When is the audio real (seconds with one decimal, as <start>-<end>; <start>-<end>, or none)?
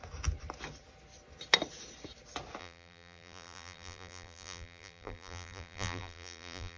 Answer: 0.0-2.6